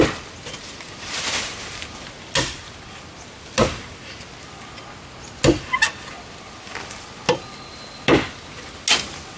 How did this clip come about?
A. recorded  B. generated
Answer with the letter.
A